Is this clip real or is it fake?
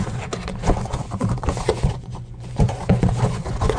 fake